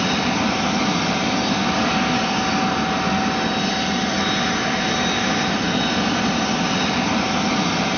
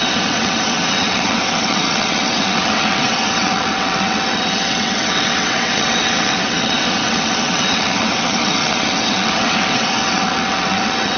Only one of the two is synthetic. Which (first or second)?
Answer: second